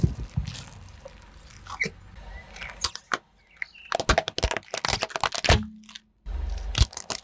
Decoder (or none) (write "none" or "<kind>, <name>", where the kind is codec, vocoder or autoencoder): none